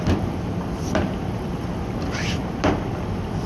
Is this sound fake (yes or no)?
no